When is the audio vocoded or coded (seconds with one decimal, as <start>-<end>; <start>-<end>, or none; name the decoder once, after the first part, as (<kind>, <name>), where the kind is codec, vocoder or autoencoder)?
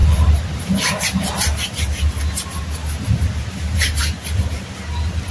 0.0-0.6 (vocoder, BigVGAN v2); 2.8-4.0